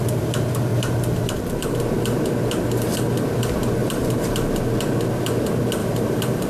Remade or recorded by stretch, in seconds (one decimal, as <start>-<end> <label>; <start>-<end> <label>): 0.0-0.7 recorded; 0.7-1.8 remade; 1.8-3.8 recorded; 3.8-4.6 remade; 4.6-5.8 recorded; 5.8-6.5 remade